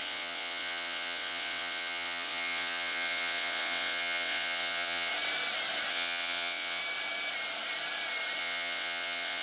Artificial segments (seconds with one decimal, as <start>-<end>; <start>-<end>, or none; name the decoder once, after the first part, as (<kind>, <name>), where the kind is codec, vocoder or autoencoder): 0.0-5.1 (vocoder, WaveNeXt); 5.9-6.8; 8.4-9.4